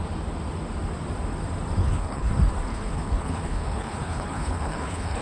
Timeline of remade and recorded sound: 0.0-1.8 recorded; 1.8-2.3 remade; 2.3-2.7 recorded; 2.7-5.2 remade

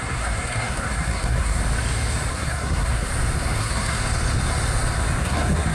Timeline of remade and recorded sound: 0.0-1.6 remade; 1.6-2.3 recorded; 2.3-3.1 remade; 3.1-3.6 recorded; 3.6-4.0 remade; 4.0-5.2 recorded; 5.2-5.7 remade